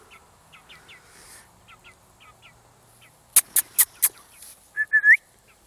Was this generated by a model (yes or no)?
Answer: no